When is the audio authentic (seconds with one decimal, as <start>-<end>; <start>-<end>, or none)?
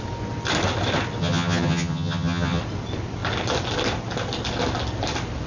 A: 0.0-1.2; 2.6-5.5